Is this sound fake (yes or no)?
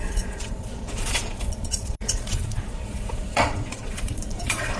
yes